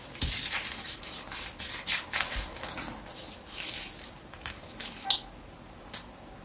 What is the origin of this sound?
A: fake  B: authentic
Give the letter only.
B